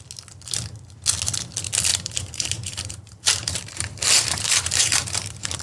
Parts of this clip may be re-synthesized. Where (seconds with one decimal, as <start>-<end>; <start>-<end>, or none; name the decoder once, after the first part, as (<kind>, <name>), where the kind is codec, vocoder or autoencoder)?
1.9-5.6 (vocoder, BigVGAN v2)